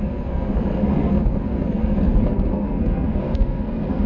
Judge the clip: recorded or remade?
remade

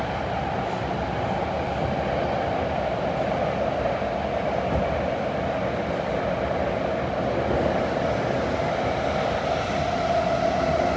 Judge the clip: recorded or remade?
recorded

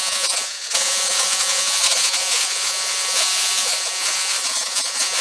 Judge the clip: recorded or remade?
remade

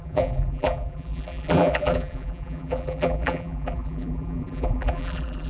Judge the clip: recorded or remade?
remade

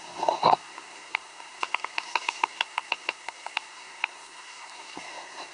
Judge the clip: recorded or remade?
remade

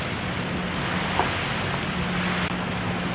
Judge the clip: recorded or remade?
recorded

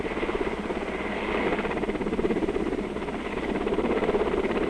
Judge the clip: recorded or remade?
recorded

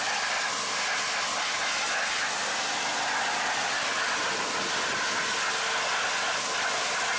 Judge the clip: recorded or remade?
recorded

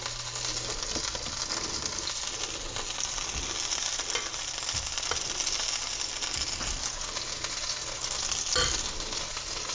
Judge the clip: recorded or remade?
recorded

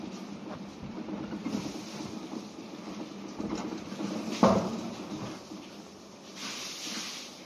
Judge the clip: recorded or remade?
recorded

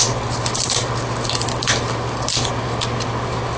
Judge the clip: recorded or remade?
recorded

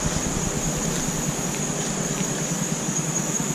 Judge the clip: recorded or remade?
recorded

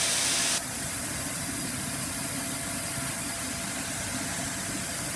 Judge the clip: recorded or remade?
recorded